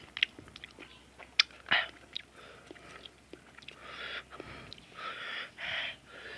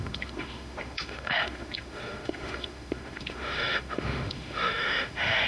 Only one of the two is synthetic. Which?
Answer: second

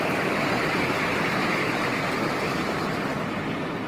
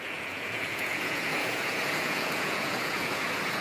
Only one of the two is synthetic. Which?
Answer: second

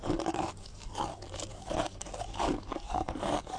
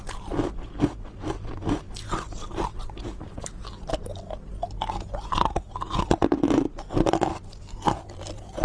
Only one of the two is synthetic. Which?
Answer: first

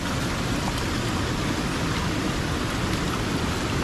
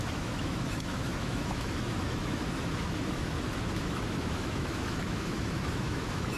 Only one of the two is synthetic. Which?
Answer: second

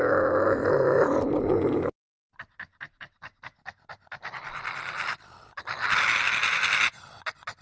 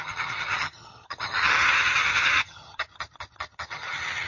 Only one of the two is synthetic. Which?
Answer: second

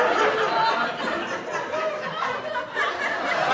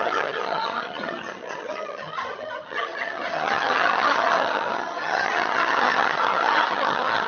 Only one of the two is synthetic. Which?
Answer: second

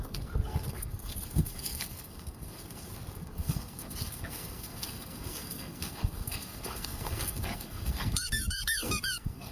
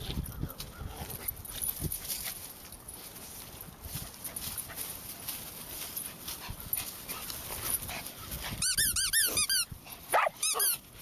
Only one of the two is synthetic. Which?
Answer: first